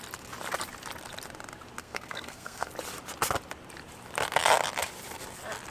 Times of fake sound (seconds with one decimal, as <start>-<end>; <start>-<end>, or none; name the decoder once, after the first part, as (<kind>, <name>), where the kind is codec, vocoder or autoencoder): 1.8-2.7 (codec, SNAC)